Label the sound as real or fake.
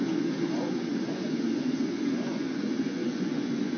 fake